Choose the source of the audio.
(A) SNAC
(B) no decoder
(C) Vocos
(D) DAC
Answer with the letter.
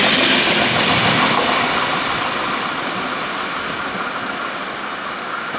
B